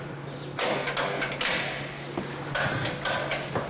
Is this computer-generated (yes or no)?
no